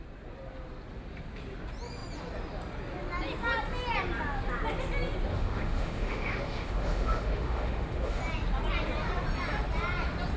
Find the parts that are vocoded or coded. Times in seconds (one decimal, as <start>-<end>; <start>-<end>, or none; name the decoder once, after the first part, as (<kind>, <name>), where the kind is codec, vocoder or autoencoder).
5.3-8.2 (autoencoder, DAC-VAE)